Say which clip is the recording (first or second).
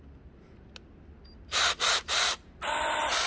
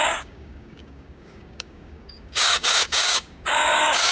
first